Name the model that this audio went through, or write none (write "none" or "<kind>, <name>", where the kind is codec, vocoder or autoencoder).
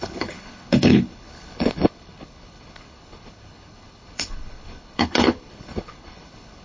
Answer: codec, HILCodec